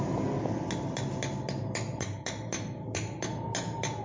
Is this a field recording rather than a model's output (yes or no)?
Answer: yes